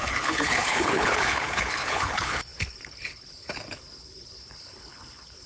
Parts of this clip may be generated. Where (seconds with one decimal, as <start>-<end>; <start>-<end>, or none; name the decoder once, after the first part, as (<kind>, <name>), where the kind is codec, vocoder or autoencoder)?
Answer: 0.0-5.5 (codec, HILCodec)